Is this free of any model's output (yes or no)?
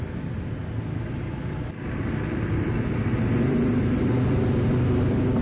yes